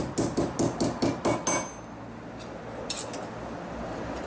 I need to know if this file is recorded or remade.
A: recorded